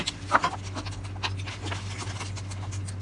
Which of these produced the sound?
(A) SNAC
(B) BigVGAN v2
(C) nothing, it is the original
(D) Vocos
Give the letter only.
C